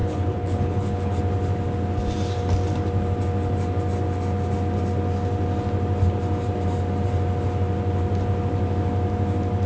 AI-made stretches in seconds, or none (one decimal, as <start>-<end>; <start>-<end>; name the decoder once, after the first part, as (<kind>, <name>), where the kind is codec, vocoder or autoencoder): 0.0-1.2 (codec, HILCodec)

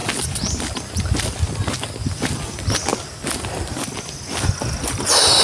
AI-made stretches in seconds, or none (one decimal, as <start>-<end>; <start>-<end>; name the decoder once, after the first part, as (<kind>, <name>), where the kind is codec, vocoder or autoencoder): none

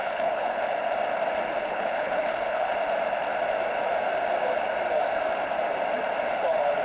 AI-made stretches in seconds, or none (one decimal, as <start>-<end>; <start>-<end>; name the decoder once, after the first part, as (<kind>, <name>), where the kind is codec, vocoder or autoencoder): 0.0-0.6 (codec, HILCodec); 1.6-2.7

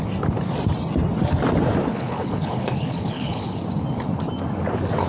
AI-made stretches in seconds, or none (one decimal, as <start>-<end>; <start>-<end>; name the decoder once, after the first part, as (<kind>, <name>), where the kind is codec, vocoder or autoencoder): 1.9-3.6 (codec, HILCodec)

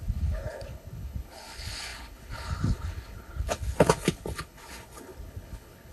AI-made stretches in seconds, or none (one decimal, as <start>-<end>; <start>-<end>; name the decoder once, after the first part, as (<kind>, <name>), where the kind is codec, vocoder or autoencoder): 0.0-5.9 (codec, HILCodec)

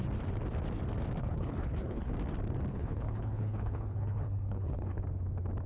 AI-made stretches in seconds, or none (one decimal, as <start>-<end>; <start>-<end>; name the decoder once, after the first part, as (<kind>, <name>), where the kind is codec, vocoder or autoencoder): 1.2-2.1 (codec, HILCodec); 2.7-5.0